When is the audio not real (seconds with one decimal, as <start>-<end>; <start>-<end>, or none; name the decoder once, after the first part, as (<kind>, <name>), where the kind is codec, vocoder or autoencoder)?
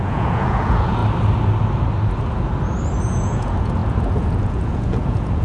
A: 0.0-1.0 (vocoder, Vocos); 3.0-5.4